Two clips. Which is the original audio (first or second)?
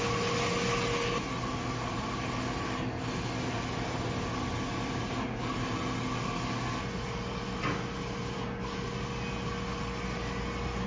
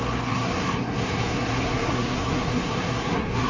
first